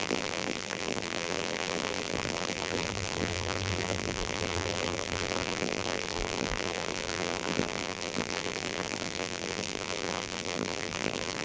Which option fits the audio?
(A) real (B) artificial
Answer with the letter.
B